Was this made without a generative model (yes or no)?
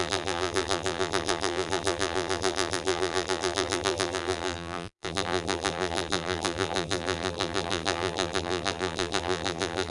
no